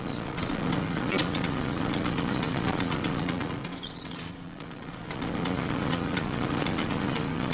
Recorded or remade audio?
remade